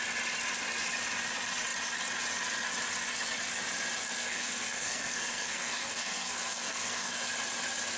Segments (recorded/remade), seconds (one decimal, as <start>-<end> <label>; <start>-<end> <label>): 0.0-4.1 recorded; 4.1-7.3 remade; 7.3-8.0 recorded